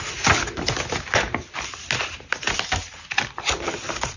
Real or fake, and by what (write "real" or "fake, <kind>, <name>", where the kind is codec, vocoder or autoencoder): real